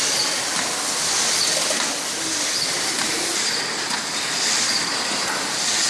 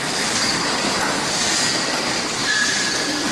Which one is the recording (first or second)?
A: first